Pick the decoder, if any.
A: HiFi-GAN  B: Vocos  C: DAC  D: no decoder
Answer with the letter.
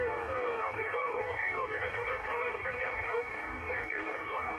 C